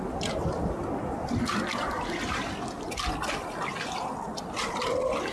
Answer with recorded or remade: recorded